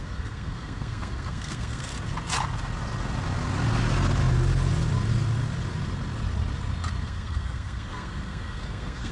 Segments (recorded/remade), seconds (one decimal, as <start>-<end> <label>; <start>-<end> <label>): 0.0-1.9 remade; 1.9-7.0 recorded; 7.0-9.1 remade